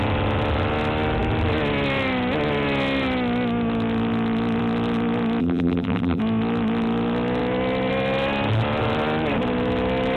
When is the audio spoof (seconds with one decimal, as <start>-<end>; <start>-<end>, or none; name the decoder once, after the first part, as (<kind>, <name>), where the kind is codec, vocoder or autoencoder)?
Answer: 5.4-6.2 (vocoder, BigVGAN v2)